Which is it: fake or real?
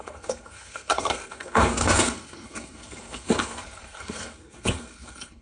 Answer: fake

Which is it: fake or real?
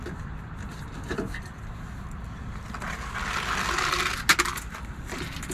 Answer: real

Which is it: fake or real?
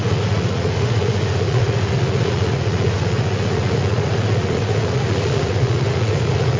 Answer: fake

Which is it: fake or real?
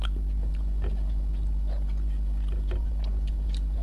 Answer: real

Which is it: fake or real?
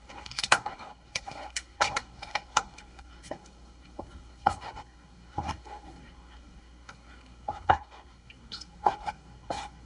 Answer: fake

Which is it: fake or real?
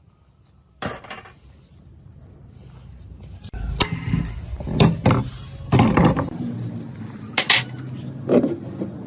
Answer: real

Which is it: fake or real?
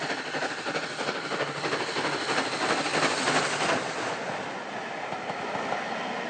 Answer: real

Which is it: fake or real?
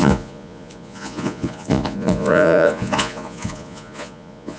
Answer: fake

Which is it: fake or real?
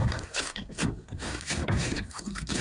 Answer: fake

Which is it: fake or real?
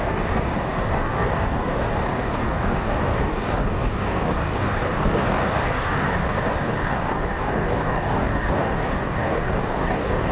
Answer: fake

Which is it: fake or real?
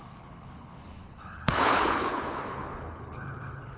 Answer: fake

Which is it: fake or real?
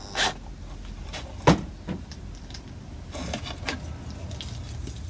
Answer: real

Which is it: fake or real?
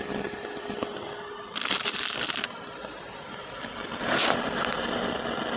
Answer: real